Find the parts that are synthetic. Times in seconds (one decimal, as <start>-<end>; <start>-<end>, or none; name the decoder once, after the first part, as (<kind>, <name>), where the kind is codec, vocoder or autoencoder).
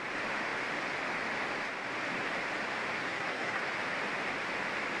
3.0-3.6 (codec, SNAC)